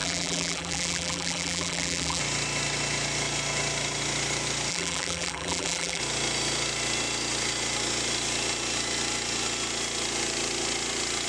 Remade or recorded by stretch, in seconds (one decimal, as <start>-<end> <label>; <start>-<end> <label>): 0.0-2.2 remade; 2.2-4.7 recorded; 4.7-6.0 remade; 6.0-11.3 recorded